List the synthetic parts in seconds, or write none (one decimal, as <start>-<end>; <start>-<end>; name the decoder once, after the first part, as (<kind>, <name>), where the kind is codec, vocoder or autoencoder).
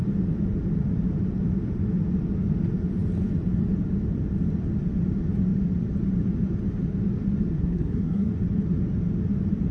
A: 7.5-8.3 (codec, SNAC)